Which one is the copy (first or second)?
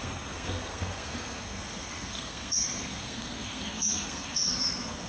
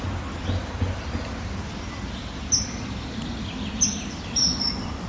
first